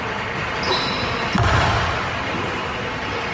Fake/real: real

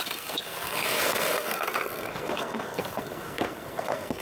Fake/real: fake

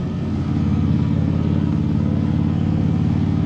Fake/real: fake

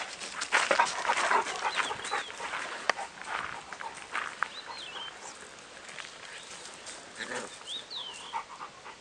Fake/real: real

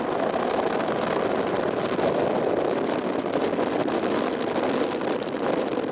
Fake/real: real